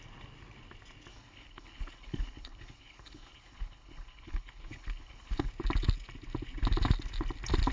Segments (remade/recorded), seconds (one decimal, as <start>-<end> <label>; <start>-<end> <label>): 0.0-1.1 recorded; 1.1-5.5 remade; 5.5-7.7 recorded